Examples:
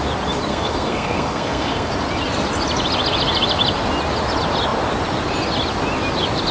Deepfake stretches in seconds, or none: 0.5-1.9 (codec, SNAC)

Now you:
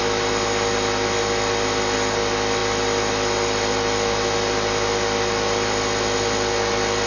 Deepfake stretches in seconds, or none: none